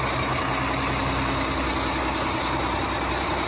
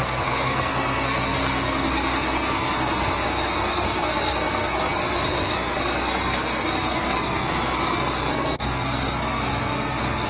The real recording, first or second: first